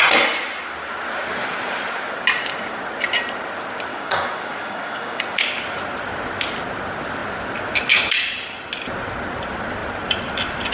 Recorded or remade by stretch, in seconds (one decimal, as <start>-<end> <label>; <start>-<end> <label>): 0.0-3.9 recorded; 3.9-5.2 remade; 5.2-10.7 recorded